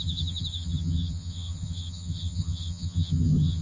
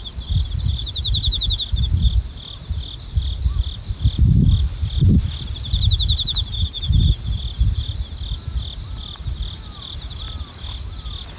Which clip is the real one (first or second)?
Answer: second